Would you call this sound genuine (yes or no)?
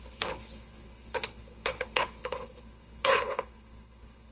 no